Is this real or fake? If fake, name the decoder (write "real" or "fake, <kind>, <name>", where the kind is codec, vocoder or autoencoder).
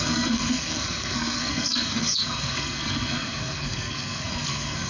fake, codec, SNAC